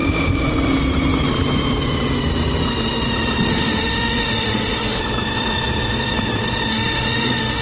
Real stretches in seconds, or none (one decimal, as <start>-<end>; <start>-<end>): 0.0-3.5; 5.0-6.7